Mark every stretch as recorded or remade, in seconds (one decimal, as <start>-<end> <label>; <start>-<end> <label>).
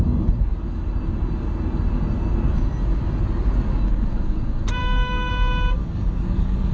0.0-4.8 recorded; 4.8-5.3 remade; 5.3-5.8 recorded; 5.8-6.7 remade